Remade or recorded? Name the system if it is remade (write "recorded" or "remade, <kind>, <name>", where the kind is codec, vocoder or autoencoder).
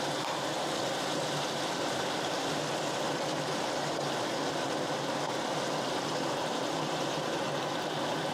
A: recorded